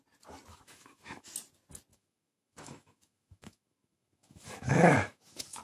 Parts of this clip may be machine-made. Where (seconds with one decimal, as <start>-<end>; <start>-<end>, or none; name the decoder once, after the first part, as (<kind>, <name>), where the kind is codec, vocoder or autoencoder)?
0.5-1.3 (autoencoder, DAC-VAE); 1.9-5.6